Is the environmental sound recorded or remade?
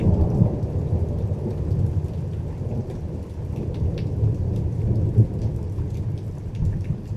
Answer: recorded